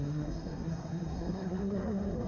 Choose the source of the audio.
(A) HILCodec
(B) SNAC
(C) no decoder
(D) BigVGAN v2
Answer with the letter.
B